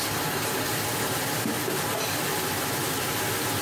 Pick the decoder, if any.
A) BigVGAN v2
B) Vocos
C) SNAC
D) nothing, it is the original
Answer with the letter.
D